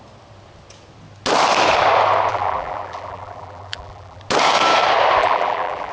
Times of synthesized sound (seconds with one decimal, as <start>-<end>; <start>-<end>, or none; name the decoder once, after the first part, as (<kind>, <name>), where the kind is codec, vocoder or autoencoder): 2.3-4.2 (vocoder, BigVGAN v2); 5.2-5.9